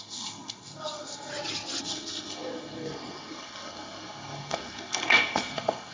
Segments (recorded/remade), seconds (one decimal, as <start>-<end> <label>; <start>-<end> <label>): 0.0-1.3 remade; 1.3-1.8 recorded; 1.8-5.9 remade